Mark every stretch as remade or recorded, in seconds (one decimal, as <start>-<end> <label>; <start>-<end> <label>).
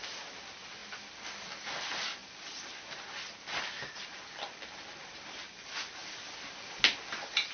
0.0-7.5 recorded